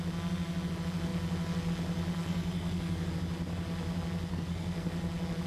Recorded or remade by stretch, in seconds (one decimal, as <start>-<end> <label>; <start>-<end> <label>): 0.0-2.2 recorded; 2.2-3.1 remade; 3.1-4.3 recorded; 4.3-4.9 remade; 4.9-5.5 recorded